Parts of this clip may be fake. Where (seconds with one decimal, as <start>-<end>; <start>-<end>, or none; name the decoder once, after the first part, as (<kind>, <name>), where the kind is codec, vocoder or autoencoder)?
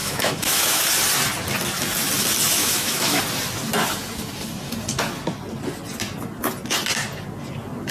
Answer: 0.0-0.8 (autoencoder, DAC-VAE); 2.6-3.2